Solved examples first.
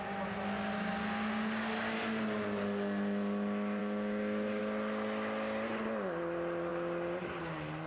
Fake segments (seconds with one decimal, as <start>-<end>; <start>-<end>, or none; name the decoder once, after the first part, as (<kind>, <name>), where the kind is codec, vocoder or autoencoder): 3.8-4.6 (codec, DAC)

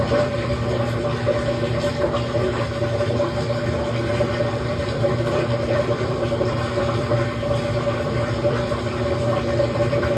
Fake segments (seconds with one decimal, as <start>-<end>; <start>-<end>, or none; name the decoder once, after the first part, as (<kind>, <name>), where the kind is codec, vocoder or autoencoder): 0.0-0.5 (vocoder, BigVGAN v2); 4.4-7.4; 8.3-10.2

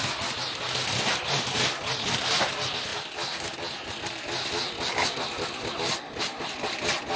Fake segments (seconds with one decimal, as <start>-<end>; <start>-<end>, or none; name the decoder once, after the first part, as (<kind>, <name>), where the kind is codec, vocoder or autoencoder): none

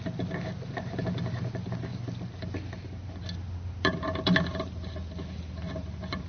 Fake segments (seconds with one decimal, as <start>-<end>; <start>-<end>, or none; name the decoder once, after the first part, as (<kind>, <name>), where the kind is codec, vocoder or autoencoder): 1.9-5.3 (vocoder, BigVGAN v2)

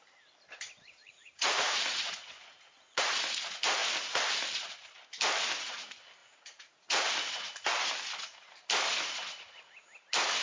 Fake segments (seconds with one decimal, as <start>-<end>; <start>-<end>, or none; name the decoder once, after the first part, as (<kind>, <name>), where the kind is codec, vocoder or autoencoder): 1.0-3.2 (vocoder, Vocos); 6.2-7.1